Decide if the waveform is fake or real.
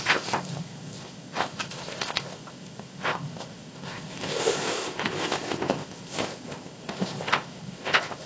fake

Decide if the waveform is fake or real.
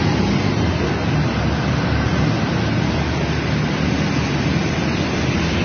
real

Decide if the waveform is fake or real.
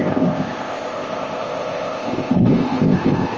fake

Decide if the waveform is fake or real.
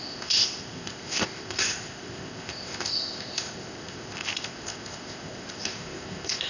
fake